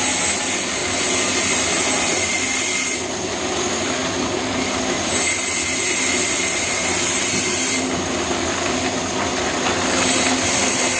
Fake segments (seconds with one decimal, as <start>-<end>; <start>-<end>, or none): none